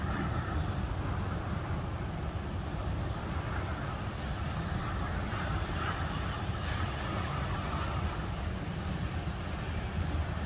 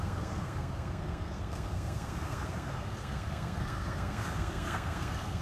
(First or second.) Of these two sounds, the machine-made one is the second